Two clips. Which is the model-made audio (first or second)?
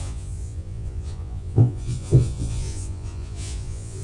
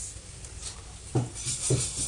first